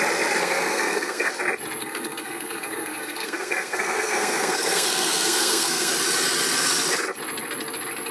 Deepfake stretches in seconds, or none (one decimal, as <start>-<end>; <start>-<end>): 0.4-1.3; 1.8-5.9